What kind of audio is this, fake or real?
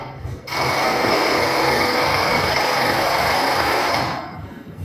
fake